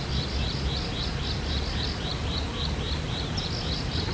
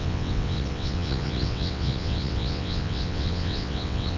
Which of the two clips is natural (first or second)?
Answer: first